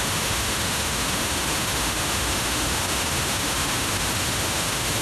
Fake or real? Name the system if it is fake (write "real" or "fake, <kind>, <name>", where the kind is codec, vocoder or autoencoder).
fake, autoencoder, DAC-VAE